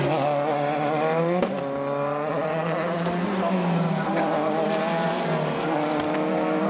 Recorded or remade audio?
recorded